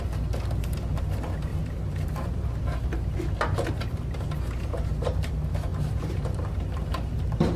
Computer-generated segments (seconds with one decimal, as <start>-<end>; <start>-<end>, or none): 1.5-2.6; 4.7-5.3; 5.7-7.6